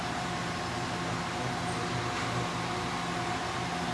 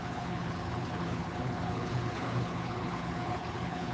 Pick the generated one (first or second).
second